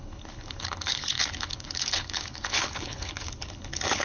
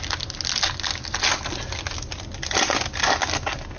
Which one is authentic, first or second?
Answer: second